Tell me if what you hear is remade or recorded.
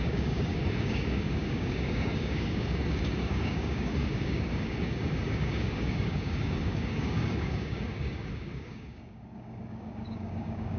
remade